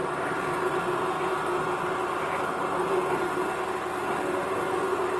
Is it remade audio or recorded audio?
recorded